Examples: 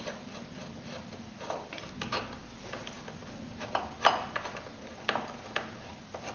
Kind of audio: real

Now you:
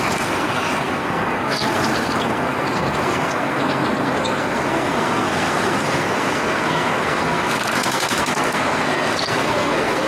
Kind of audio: fake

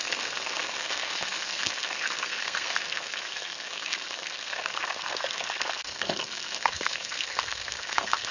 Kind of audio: fake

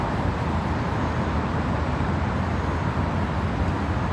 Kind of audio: real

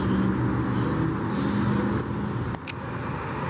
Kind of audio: real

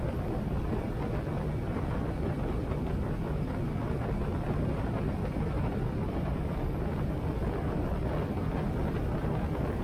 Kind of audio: real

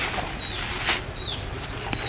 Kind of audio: real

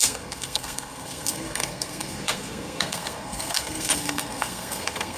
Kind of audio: fake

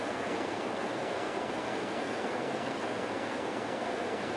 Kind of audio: fake